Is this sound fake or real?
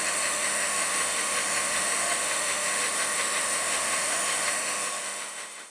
fake